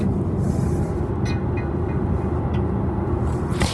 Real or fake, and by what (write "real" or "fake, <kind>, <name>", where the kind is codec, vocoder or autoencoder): real